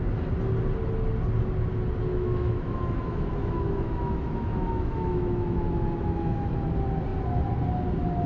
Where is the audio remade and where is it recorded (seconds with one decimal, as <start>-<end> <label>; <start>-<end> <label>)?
0.0-2.1 recorded; 2.1-6.5 remade; 6.5-8.3 recorded